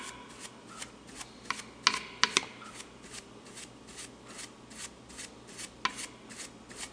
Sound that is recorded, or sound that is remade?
recorded